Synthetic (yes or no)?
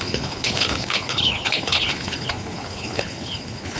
yes